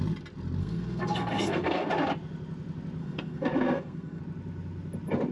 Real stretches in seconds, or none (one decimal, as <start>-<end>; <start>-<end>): 0.0-0.6; 1.9-3.0; 4.2-5.3